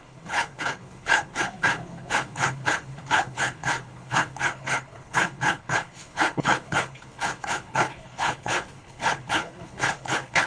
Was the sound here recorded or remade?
remade